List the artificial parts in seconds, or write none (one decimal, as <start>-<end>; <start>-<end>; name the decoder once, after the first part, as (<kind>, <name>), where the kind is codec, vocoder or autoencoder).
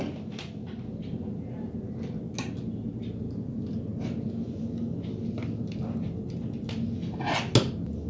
none